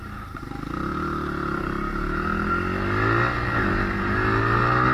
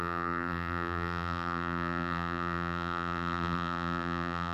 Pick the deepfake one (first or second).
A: second